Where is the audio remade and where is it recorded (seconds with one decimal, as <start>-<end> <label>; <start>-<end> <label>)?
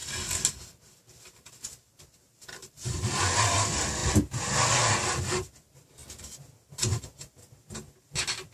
0.0-2.6 recorded; 2.6-3.1 remade; 3.1-8.5 recorded